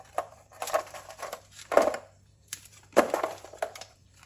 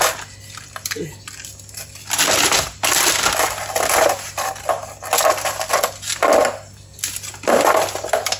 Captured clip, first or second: second